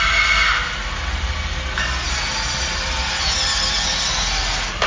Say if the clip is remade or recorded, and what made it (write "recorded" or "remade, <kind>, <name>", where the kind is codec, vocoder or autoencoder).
recorded